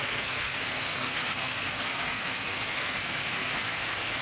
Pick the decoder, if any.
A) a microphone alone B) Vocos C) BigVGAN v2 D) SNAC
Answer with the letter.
D